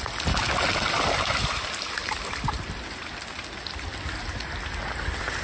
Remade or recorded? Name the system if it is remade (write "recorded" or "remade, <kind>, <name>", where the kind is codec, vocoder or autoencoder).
recorded